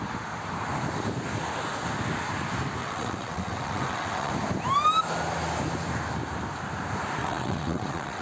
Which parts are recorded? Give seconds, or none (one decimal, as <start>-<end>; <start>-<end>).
0.0-2.8; 4.3-7.2